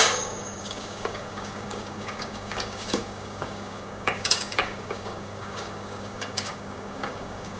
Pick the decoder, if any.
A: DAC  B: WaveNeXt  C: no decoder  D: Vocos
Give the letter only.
A